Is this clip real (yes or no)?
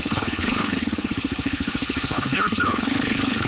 no